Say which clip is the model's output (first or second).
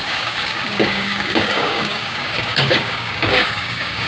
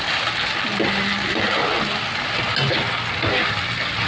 first